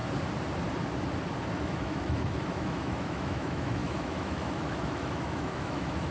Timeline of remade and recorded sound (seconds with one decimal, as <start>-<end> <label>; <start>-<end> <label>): 0.0-1.5 recorded; 1.5-6.1 remade